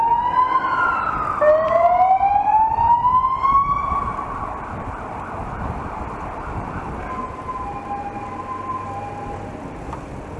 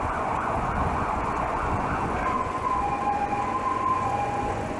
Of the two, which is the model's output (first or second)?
second